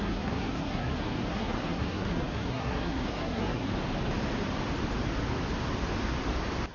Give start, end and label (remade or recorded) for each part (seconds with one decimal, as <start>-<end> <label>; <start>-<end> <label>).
0.0-3.7 remade; 3.7-6.7 recorded